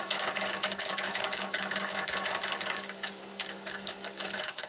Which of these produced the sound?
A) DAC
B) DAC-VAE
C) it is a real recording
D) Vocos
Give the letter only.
A